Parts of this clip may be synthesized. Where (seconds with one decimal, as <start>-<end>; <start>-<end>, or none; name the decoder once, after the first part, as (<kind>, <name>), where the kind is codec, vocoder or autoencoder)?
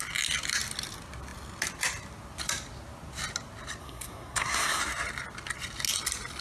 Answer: 3.8-4.8 (codec, SNAC)